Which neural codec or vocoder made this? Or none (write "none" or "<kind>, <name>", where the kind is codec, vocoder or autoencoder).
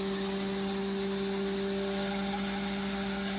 none